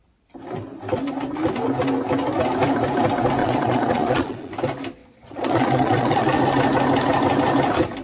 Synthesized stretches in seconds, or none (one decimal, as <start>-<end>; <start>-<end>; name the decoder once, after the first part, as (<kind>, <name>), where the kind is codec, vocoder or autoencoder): 3.4-4.5 (vocoder, Vocos); 5.0-6.4